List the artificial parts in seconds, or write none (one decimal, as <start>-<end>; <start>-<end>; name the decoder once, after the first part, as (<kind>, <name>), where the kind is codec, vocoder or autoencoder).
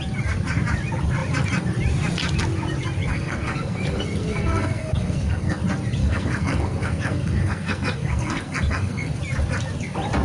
3.1-5.6 (codec, SNAC); 6.0-9.2